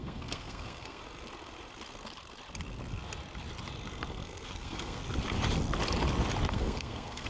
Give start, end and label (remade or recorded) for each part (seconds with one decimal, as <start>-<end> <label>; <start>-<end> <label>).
0.0-1.0 remade; 1.0-4.1 recorded; 4.1-5.0 remade; 5.0-6.5 recorded; 6.5-7.3 remade